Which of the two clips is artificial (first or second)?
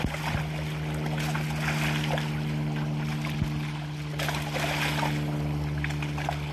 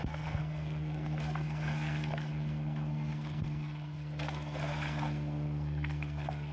second